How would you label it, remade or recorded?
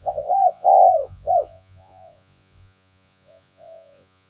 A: remade